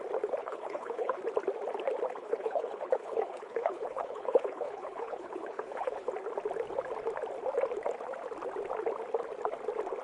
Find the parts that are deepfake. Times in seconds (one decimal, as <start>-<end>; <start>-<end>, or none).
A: 0.4-1.2; 2.2-6.1